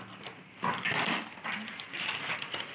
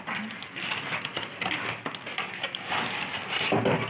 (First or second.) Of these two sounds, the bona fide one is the second